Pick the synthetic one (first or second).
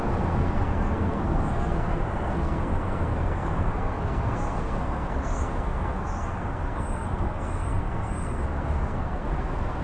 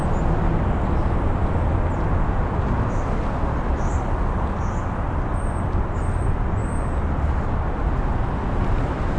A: first